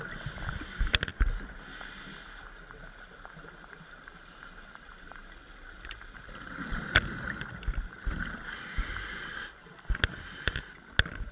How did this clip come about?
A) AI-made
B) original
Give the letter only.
B